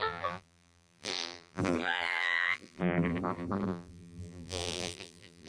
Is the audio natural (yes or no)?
no